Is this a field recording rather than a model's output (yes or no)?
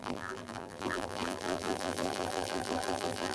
no